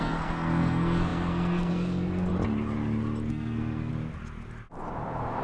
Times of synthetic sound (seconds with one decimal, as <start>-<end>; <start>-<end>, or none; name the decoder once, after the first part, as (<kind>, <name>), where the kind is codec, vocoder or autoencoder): 0.0-2.3 (codec, SNAC); 3.3-3.9